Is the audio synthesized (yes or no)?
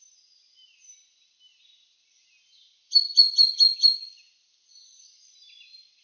no